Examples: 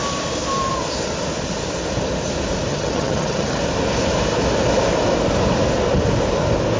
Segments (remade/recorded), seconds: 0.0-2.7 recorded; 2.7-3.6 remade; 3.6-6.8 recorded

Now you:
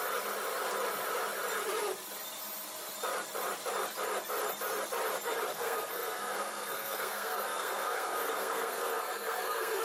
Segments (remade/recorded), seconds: 0.0-5.5 recorded; 5.5-9.8 remade

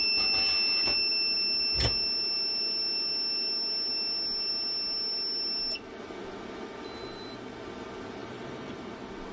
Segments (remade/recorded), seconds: 0.0-8.2 recorded; 8.2-8.7 remade; 8.7-9.3 recorded

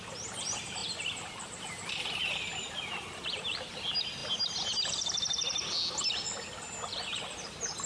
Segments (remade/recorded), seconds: 0.0-7.9 recorded

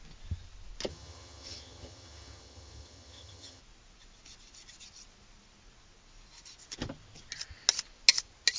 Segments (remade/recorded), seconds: 0.0-0.9 recorded; 0.9-3.6 remade; 3.6-8.6 recorded

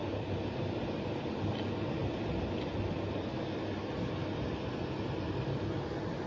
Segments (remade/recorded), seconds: 0.0-1.3 remade; 1.3-2.0 recorded; 2.0-2.7 remade; 2.7-4.2 recorded; 4.2-5.6 remade; 5.6-6.3 recorded

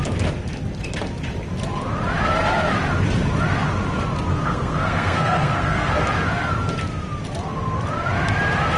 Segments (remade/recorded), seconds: 0.0-4.3 recorded; 4.3-5.9 remade; 5.9-8.8 recorded

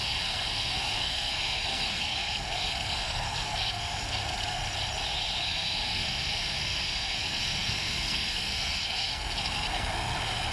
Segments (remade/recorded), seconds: 0.0-4.6 remade; 4.6-5.4 recorded; 5.4-10.5 remade